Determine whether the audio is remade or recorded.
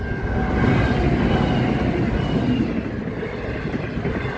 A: recorded